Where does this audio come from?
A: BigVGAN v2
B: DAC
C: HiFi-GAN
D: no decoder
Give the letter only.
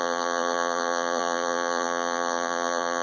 A